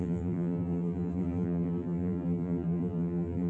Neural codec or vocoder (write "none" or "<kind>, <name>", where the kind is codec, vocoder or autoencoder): vocoder, BigVGAN v2